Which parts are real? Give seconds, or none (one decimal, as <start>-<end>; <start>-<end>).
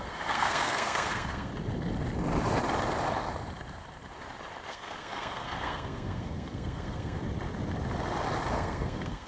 1.5-4.7; 7.2-8.5